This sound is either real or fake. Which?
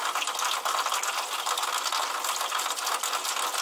real